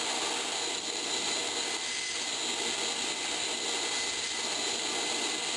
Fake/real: real